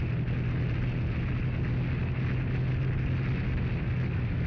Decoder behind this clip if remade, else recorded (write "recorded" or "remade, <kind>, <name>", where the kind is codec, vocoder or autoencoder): recorded